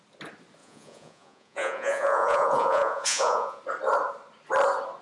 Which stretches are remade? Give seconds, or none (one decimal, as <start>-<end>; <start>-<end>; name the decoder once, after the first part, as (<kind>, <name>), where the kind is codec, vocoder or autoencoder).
0.6-3.6 (vocoder, Vocos)